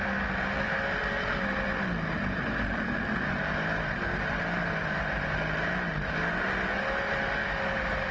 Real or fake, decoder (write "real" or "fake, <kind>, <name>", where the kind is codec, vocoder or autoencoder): real